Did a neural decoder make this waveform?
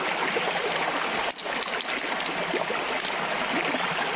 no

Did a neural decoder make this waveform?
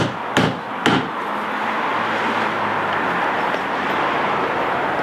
no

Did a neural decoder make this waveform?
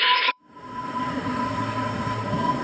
yes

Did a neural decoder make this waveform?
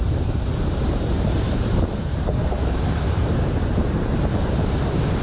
yes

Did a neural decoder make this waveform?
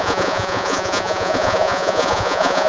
yes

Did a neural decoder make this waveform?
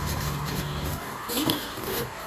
yes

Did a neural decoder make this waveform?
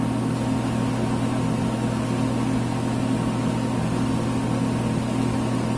no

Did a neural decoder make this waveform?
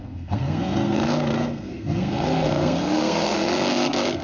yes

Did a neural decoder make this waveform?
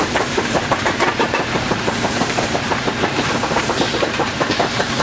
yes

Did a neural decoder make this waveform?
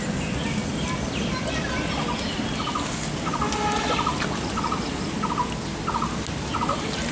no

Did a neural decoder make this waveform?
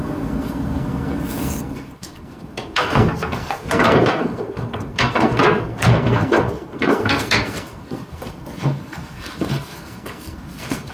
yes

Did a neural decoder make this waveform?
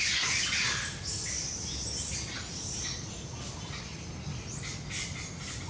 no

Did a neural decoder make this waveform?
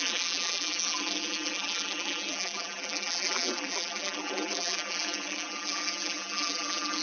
yes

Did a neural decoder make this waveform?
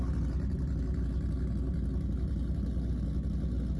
no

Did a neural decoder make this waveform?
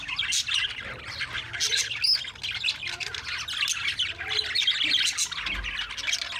no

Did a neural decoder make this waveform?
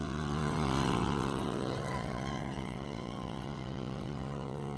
yes